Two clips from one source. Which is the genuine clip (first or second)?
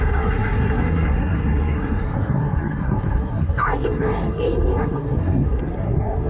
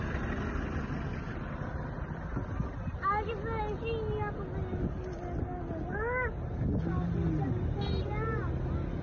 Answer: second